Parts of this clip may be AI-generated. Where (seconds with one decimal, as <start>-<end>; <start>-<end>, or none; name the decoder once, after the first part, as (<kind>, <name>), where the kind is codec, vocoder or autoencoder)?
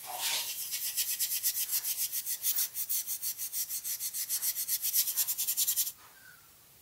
none